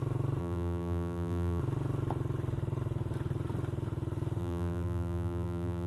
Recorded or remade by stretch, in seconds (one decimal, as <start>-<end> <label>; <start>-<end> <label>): 0.0-0.4 recorded; 0.4-1.6 remade; 1.6-4.4 recorded; 4.4-5.9 remade